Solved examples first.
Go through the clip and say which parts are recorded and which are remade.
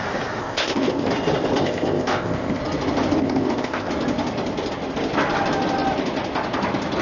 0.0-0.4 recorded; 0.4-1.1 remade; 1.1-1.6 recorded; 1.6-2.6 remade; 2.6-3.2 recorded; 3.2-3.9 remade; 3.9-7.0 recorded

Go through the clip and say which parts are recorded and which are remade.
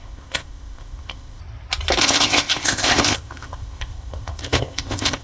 0.0-1.4 remade; 1.4-2.0 recorded; 2.0-5.2 remade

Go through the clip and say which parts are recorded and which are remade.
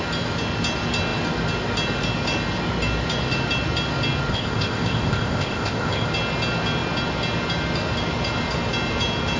0.0-4.3 recorded; 4.3-6.1 remade; 6.1-9.4 recorded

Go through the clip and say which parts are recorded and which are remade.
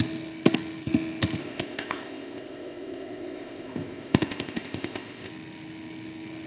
0.0-1.4 recorded; 1.4-5.3 remade; 5.3-6.5 recorded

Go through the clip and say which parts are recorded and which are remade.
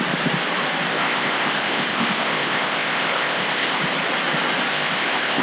0.0-0.9 recorded; 0.9-3.8 remade; 3.8-4.7 recorded; 4.7-5.4 remade